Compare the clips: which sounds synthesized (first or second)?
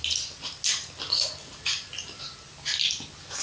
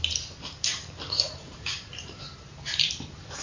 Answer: second